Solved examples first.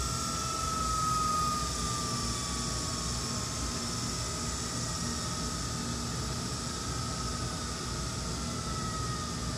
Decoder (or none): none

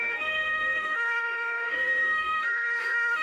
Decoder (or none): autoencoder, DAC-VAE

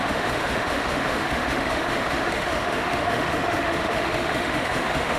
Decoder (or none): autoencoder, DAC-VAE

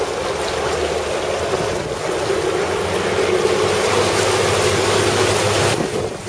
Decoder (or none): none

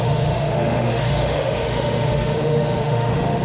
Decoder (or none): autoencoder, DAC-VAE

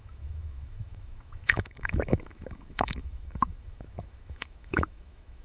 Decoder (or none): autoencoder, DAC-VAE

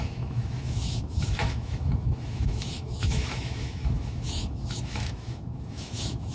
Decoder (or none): autoencoder, DAC-VAE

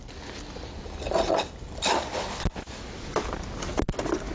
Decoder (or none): none